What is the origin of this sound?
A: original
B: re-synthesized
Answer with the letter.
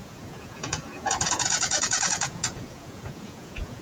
B